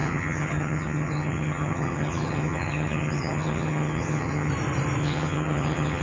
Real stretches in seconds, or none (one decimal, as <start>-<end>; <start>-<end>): 4.5-5.0